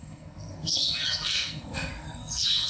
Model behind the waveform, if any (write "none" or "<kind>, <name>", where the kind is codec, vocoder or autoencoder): codec, SNAC